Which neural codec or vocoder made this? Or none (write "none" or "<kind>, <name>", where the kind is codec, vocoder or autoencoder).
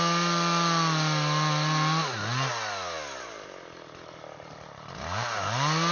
none